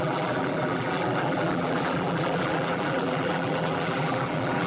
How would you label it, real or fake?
fake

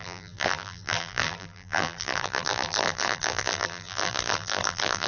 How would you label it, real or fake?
fake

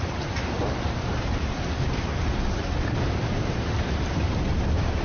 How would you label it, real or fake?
fake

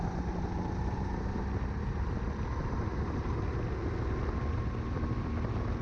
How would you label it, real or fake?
real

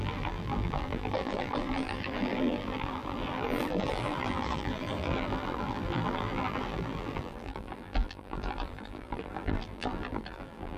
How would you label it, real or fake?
fake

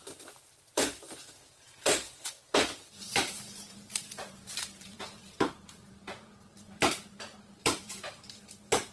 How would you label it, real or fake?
fake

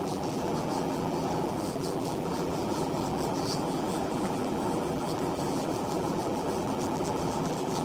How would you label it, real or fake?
fake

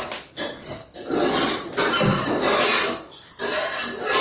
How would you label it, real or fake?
real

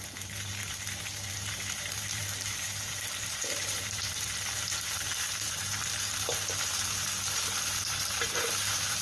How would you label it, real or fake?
fake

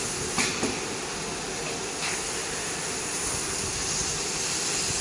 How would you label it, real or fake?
fake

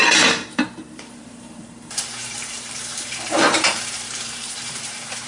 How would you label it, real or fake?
fake